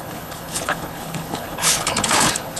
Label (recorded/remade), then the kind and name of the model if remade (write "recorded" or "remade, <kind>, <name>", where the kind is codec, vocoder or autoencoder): remade, codec, HILCodec